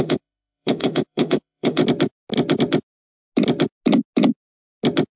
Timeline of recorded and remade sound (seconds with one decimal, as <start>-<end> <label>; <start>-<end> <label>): 0.0-1.8 remade; 1.8-5.2 recorded